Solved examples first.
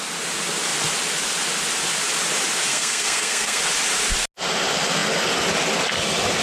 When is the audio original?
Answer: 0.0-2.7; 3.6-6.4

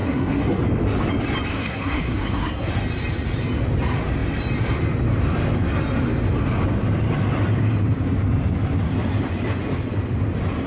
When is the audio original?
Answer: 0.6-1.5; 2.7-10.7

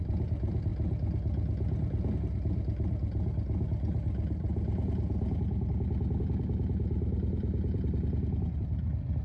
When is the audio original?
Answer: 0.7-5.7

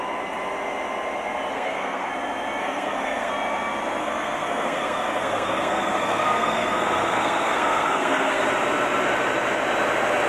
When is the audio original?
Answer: 0.0-1.5; 2.1-2.6; 3.3-4.0; 8.4-10.3

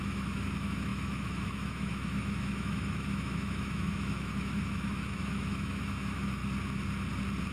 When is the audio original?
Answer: 6.4-7.5